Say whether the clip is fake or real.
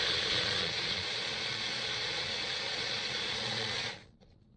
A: fake